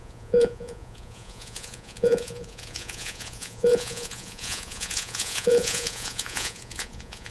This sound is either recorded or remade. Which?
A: remade